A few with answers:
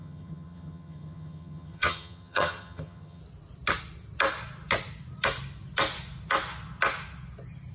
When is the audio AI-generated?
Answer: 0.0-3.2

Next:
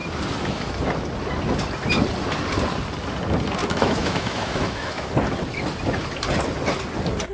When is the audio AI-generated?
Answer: 3.6-5.1